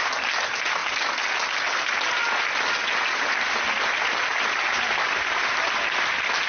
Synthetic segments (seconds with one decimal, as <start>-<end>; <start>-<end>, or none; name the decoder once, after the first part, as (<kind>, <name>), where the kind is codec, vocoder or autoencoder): none